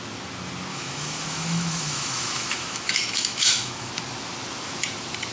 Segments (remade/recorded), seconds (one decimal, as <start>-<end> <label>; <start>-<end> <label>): 0.0-0.7 recorded; 0.7-3.9 remade; 3.9-5.3 recorded